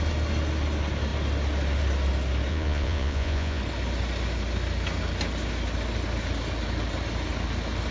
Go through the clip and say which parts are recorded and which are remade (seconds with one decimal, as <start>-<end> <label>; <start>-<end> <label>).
0.0-2.5 recorded; 2.5-3.6 remade; 3.6-7.9 recorded

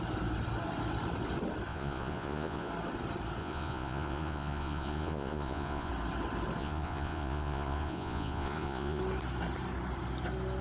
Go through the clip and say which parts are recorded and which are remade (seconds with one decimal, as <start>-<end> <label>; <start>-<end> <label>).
0.0-1.7 recorded; 1.7-2.7 remade; 2.7-3.4 recorded; 3.4-5.9 remade; 5.9-6.6 recorded; 6.6-9.0 remade; 9.0-10.6 recorded

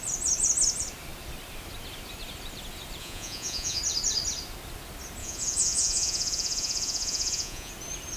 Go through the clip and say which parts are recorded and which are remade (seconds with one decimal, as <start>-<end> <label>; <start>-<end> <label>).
0.0-3.0 recorded; 3.0-3.8 remade; 3.8-5.2 recorded; 5.2-7.7 remade; 7.7-8.2 recorded

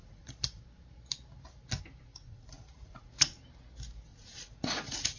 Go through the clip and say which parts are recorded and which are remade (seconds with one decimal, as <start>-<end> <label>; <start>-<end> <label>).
0.0-0.6 remade; 0.6-2.1 recorded; 2.1-3.1 remade; 3.1-4.1 recorded; 4.1-5.2 remade